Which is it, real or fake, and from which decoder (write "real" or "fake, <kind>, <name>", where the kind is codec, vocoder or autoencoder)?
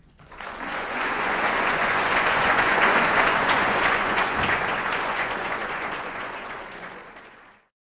fake, vocoder, Vocos